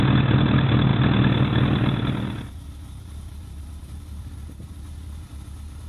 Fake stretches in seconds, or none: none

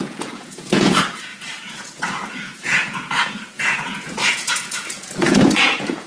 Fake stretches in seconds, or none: 0.0-6.1 (vocoder, Vocos)

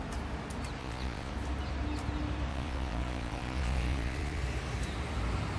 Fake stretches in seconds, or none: 0.8-1.3 (vocoder, Vocos); 2.5-4.4

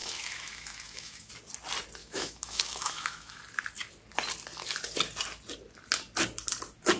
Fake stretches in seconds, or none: 0.0-1.3 (autoencoder, DAC-VAE); 2.0-3.4

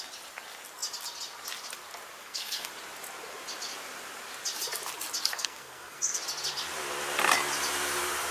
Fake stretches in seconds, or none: 2.2-2.7 (codec, SNAC); 5.3-6.2